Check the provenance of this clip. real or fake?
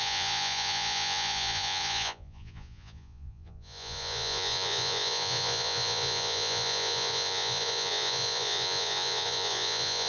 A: fake